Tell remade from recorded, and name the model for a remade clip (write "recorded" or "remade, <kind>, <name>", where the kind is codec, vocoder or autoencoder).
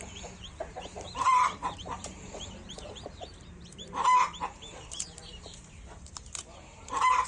remade, vocoder, BigVGAN v2